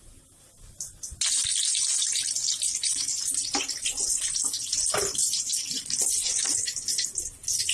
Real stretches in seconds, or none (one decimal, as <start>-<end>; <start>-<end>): 1.4-4.6